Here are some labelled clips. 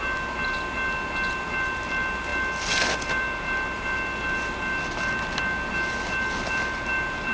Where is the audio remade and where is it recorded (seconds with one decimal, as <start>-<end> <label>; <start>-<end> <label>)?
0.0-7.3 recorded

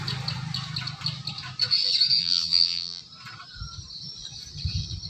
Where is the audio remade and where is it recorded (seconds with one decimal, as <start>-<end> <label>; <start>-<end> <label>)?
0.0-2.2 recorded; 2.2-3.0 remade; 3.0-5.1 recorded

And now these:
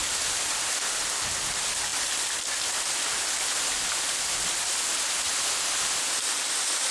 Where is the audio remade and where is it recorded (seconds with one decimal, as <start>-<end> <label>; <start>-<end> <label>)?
0.0-6.9 recorded

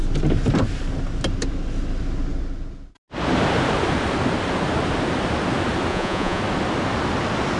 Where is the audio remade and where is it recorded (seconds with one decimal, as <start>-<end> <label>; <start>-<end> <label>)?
0.0-5.9 recorded; 5.9-6.4 remade; 6.4-7.6 recorded

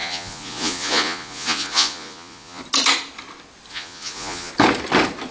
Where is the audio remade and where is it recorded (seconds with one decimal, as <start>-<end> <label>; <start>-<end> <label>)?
0.0-2.6 remade; 2.6-3.7 recorded; 3.7-4.5 remade; 4.5-5.3 recorded